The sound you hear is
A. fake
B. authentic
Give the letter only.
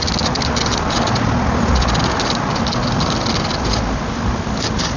B